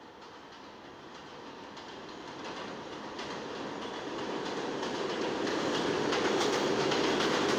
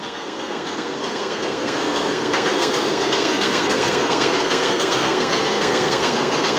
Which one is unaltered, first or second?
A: first